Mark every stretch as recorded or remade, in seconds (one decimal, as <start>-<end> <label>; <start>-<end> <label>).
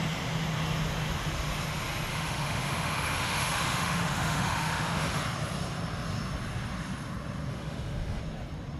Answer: 0.0-2.1 recorded; 2.1-5.2 remade; 5.2-7.5 recorded; 7.5-8.2 remade; 8.2-8.8 recorded